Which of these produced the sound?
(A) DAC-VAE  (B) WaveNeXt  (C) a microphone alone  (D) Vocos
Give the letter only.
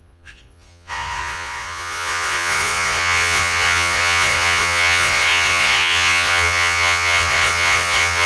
D